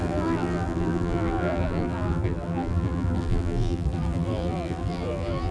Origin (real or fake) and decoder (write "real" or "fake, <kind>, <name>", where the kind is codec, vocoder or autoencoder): fake, vocoder, BigVGAN v2